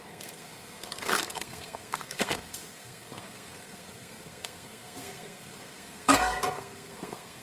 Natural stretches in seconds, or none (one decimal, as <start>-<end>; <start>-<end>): none